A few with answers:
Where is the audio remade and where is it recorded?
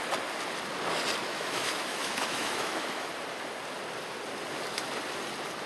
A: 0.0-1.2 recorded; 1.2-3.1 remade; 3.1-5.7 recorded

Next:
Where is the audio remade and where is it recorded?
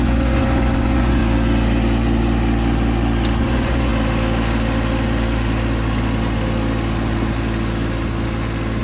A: 0.0-1.2 remade; 1.2-3.4 recorded; 3.4-3.9 remade; 3.9-8.8 recorded